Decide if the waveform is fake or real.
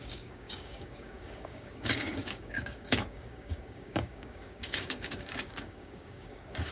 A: fake